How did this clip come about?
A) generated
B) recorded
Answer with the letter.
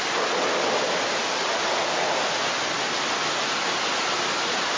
B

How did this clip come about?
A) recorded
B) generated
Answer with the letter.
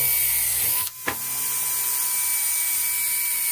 A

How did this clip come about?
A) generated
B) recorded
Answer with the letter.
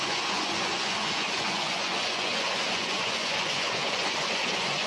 A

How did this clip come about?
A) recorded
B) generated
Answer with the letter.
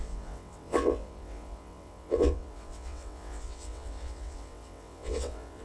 B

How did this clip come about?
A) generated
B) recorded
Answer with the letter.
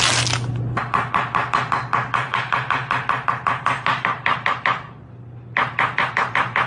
B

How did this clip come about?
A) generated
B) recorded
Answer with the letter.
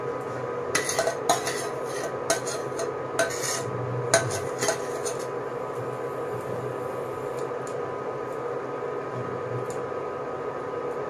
B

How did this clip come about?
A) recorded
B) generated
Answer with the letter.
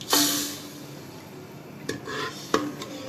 A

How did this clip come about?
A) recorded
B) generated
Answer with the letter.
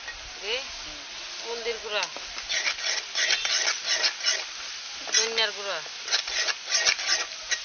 A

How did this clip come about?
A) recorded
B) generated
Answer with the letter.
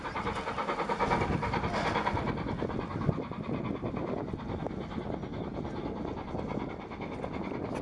A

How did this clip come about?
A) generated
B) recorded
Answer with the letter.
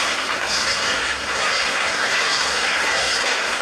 A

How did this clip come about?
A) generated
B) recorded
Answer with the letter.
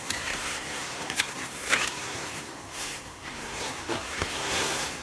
A